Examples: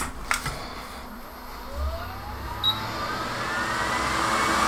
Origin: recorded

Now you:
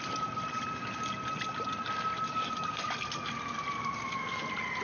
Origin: recorded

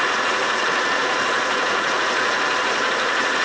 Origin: remade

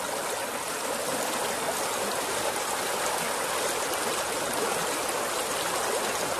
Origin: recorded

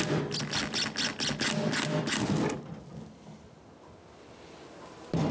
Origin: recorded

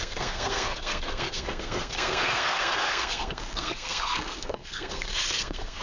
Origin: remade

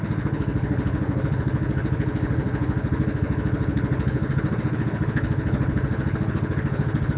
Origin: remade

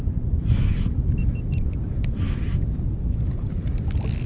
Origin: recorded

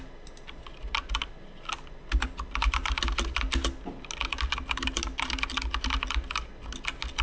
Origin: recorded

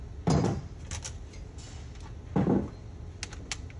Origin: recorded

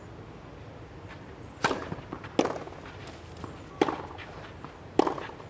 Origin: recorded